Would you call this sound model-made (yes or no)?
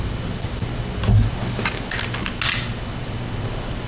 no